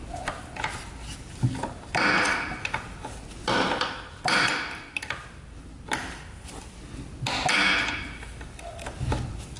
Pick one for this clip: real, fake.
real